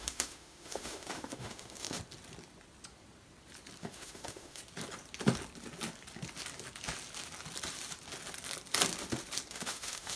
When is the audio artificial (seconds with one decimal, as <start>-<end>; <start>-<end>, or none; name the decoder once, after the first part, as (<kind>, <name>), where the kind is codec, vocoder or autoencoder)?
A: 0.0-2.0 (autoencoder, DAC-VAE); 3.8-4.6; 9.5-10.2